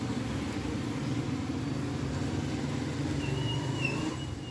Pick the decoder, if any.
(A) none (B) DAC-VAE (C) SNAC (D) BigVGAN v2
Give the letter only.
A